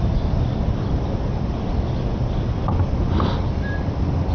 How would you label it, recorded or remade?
recorded